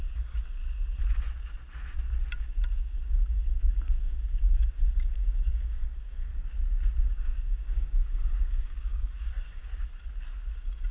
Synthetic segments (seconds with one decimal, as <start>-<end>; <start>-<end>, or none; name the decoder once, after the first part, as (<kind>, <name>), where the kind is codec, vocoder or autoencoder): 0.0-0.6 (codec, DAC); 2.4-6.3; 7.0-9.6